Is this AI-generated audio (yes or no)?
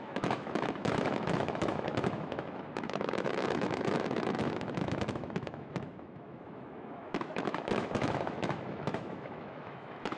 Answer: yes